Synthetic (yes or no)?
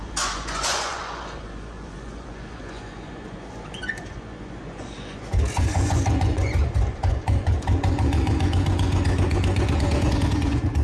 yes